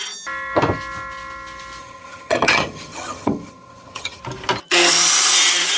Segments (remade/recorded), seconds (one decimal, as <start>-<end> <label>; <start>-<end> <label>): 0.0-1.8 recorded; 1.8-4.2 remade; 4.2-5.8 recorded